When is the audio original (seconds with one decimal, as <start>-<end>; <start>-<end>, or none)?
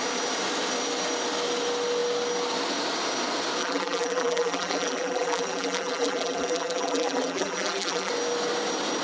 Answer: 0.0-3.6; 8.1-9.0